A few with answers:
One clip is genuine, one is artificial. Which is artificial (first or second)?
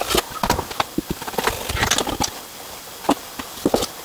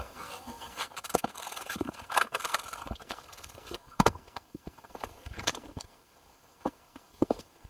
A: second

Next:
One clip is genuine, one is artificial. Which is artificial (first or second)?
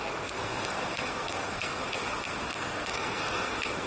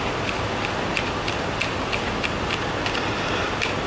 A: first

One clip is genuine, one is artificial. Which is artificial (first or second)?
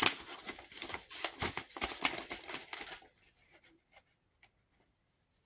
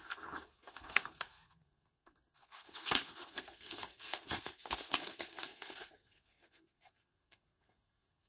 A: second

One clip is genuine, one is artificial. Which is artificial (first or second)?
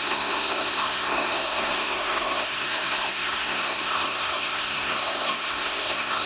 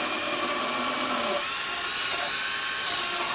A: first